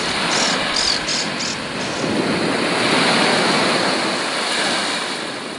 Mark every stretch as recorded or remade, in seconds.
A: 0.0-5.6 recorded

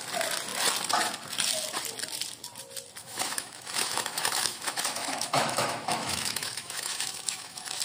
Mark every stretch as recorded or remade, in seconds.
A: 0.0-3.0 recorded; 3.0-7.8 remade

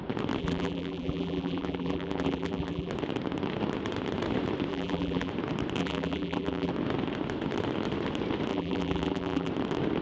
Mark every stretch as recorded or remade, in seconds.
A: 0.0-0.4 recorded; 0.4-2.9 remade; 2.9-4.7 recorded; 4.7-5.3 remade; 5.3-5.8 recorded; 5.8-6.7 remade; 6.7-8.5 recorded; 8.5-9.5 remade; 9.5-10.0 recorded

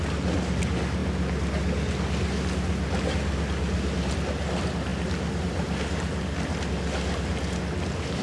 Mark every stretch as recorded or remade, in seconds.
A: 0.0-8.2 recorded

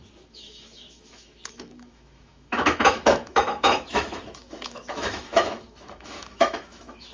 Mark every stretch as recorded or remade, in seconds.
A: 0.0-7.1 remade